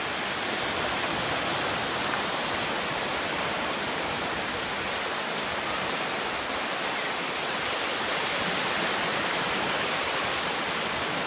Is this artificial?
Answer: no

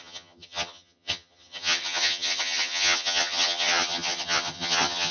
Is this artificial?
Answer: yes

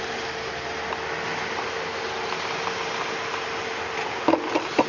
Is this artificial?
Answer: no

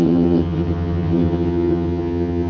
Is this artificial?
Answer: yes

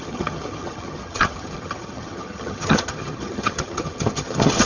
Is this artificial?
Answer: yes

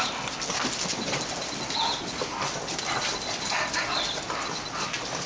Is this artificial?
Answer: no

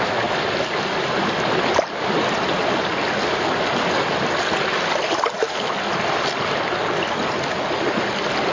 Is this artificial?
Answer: no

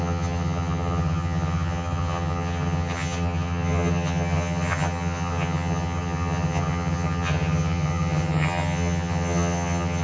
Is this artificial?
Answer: yes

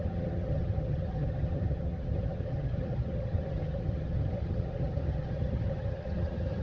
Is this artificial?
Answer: yes